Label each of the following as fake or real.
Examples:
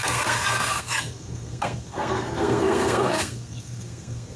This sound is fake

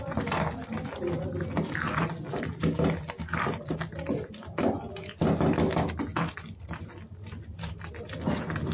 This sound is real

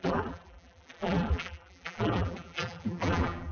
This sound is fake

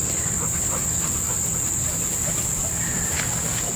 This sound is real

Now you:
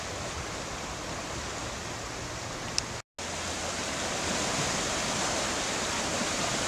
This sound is real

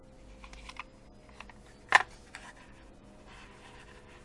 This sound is real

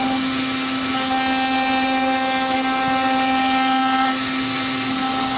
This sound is real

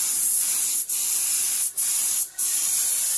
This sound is real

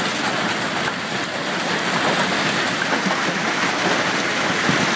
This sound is real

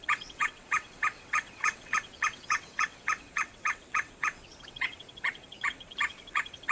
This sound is fake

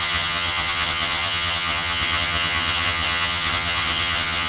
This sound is fake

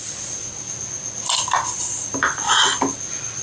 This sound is real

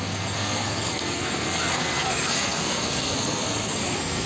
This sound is fake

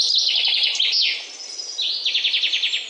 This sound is real